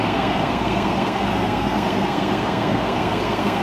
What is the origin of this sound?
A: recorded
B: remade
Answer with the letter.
B